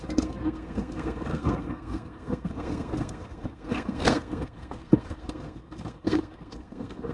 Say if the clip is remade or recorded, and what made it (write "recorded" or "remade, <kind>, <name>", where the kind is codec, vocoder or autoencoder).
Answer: remade, codec, SNAC